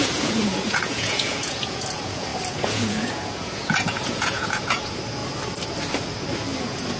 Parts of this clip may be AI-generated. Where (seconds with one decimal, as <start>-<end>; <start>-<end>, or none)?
0.0-5.2; 6.6-7.0